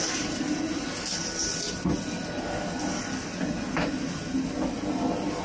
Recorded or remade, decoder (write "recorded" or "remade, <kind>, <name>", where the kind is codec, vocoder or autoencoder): recorded